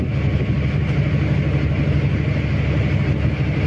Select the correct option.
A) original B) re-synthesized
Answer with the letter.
A